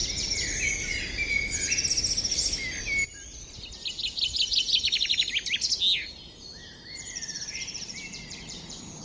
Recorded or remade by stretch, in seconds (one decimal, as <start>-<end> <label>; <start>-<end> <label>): 0.0-6.6 recorded; 6.6-9.0 remade